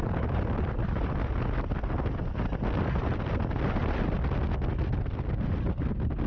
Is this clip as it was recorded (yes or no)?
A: yes